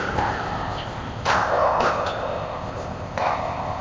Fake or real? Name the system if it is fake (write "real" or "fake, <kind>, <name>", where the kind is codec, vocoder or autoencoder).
fake, codec, ZipCodec